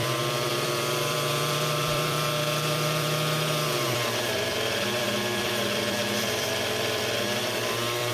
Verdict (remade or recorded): remade